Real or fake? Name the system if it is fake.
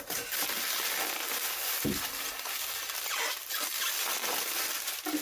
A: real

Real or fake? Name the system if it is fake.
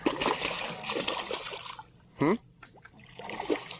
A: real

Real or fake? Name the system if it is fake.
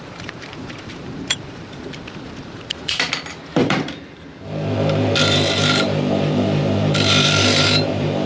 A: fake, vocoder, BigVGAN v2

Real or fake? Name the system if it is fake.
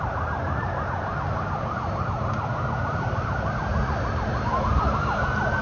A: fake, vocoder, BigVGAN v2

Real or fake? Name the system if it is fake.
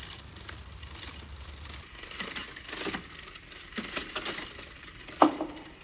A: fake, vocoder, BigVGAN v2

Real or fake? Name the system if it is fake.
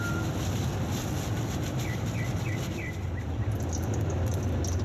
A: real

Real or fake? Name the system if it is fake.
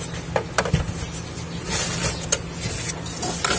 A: real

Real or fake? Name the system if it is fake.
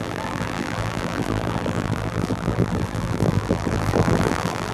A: fake, vocoder, BigVGAN v2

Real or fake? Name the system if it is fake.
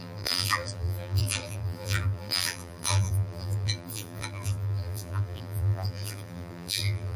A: fake, vocoder, BigVGAN v2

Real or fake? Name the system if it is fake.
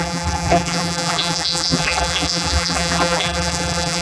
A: fake, vocoder, BigVGAN v2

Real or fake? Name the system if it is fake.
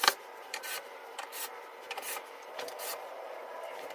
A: fake, vocoder, BigVGAN v2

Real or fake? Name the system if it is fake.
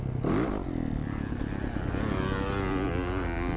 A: real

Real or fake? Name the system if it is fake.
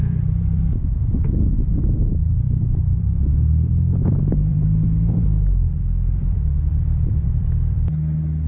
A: fake, vocoder, BigVGAN v2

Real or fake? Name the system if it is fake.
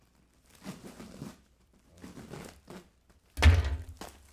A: real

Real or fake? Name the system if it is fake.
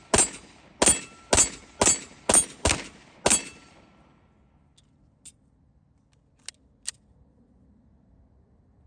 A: real